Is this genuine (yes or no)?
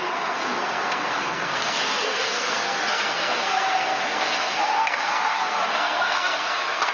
no